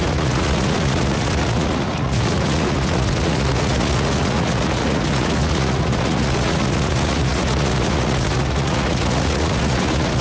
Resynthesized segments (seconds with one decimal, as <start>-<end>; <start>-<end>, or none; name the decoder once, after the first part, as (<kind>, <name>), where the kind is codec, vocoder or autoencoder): 0.0-10.2 (vocoder, Vocos)